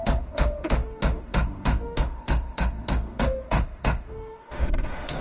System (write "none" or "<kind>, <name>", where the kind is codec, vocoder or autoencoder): autoencoder, DAC-VAE